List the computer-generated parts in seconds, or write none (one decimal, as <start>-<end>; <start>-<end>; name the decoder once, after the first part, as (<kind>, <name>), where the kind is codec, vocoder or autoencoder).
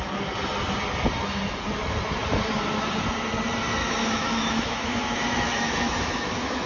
3.8-6.7 (autoencoder, DAC-VAE)